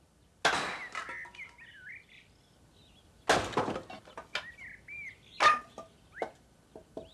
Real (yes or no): yes